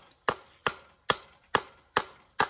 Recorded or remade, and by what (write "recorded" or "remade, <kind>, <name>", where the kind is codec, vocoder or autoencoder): recorded